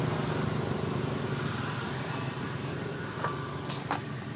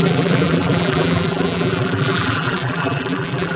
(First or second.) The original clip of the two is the first